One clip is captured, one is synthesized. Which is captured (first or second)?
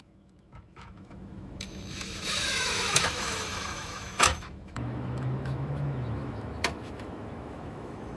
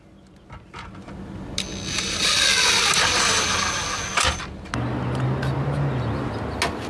second